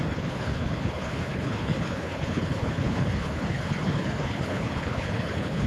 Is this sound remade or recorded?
remade